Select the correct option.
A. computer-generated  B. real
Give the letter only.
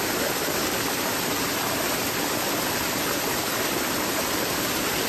B